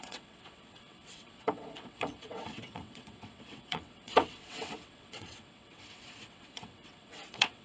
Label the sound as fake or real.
fake